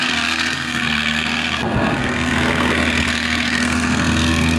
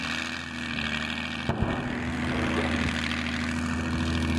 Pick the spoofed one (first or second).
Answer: first